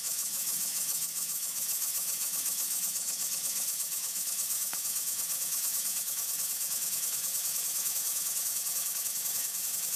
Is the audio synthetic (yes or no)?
yes